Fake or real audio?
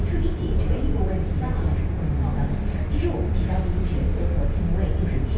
real